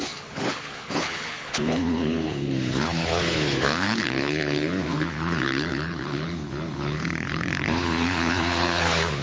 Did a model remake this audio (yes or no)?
yes